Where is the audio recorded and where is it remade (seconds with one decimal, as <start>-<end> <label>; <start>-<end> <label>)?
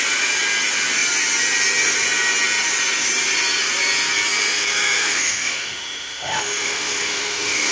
0.0-4.5 recorded; 4.5-7.7 remade